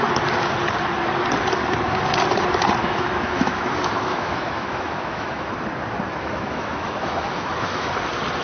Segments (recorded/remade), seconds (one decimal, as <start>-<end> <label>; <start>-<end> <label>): 0.0-2.8 recorded; 2.8-5.5 remade; 5.5-6.1 recorded; 6.1-7.9 remade; 7.9-8.4 recorded